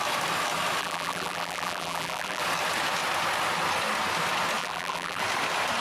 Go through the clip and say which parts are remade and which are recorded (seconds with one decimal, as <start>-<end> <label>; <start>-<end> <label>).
0.0-0.8 recorded; 0.8-2.4 remade; 2.4-4.6 recorded; 4.6-5.2 remade; 5.2-5.8 recorded